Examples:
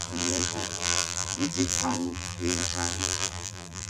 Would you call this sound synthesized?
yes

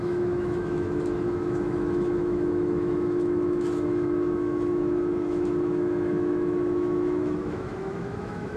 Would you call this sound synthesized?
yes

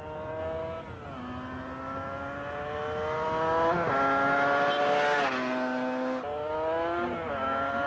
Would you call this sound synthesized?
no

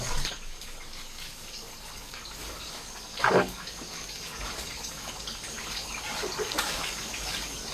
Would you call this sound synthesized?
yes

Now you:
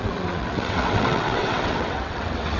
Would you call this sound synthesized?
yes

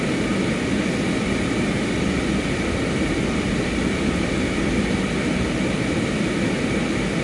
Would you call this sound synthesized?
no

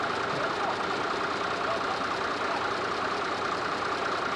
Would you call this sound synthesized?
no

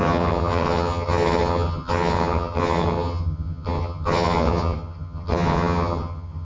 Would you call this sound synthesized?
yes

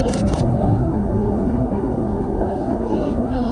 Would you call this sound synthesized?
yes